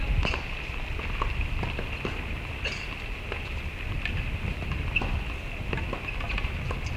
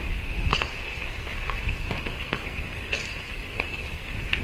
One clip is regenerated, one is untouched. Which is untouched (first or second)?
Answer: first